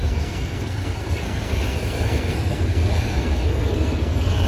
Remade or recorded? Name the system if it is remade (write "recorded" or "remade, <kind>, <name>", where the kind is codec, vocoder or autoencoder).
remade, codec, SNAC